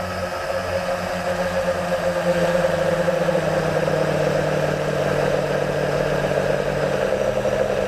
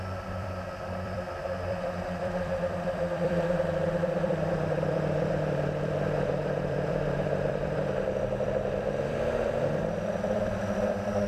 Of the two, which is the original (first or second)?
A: first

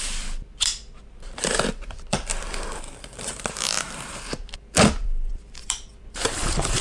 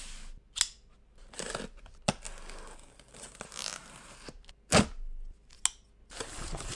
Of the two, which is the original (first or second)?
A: second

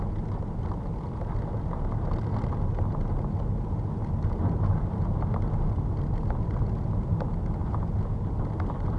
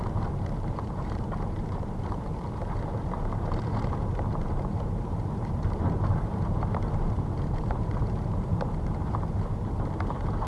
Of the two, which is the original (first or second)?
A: first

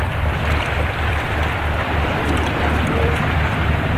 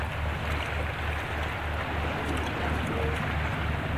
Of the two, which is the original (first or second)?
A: second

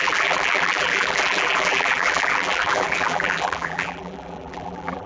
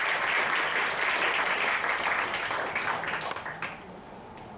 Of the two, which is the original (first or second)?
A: second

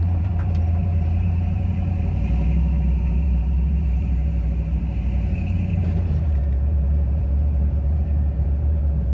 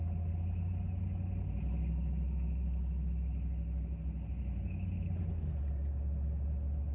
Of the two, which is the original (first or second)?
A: second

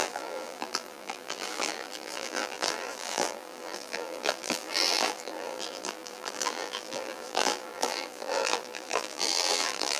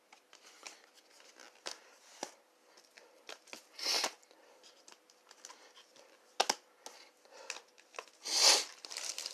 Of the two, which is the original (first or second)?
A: second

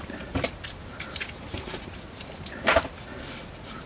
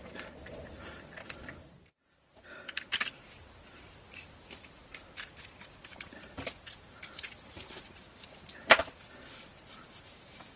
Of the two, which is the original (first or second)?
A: first